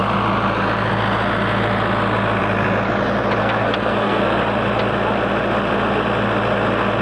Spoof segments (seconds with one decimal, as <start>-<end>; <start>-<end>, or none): 3.4-4.2